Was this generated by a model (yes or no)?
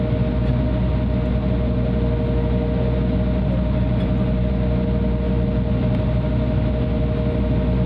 no